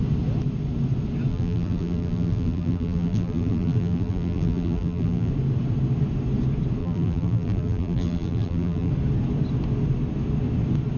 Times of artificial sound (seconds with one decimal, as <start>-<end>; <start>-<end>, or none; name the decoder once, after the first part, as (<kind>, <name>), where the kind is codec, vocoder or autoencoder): 1.3-5.3 (vocoder, BigVGAN v2); 6.8-8.9